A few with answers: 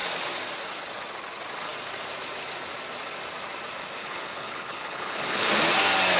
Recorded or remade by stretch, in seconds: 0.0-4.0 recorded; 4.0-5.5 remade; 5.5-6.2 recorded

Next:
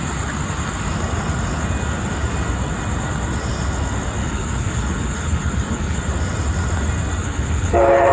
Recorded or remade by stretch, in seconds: 0.0-4.2 recorded; 4.2-6.0 remade; 6.0-7.2 recorded; 7.2-8.1 remade

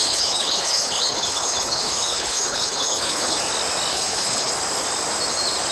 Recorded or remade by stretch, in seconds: 0.0-3.4 remade; 3.4-3.9 recorded; 3.9-4.5 remade; 4.5-5.7 recorded

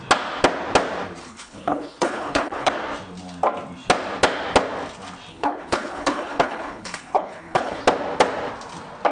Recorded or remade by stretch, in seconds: 0.0-1.2 recorded; 1.2-2.7 remade; 2.7-5.3 recorded; 5.3-7.8 remade; 7.8-9.1 recorded

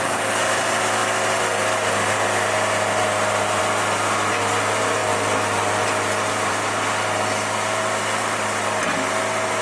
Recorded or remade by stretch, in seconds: 0.0-9.6 recorded